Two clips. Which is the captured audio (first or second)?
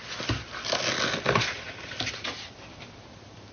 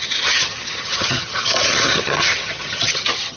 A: first